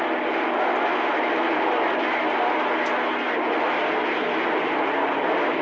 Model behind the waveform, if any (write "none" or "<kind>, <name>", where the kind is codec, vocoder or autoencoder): none